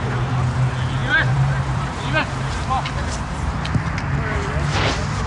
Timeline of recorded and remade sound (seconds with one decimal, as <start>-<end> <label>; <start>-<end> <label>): 0.0-1.0 recorded; 1.0-3.7 remade; 3.7-5.3 recorded